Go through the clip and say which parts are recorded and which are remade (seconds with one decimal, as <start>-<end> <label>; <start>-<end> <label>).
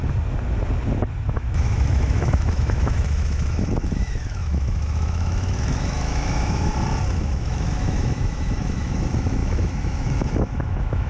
0.0-1.3 recorded; 1.3-6.7 remade; 6.7-7.2 recorded; 7.2-11.1 remade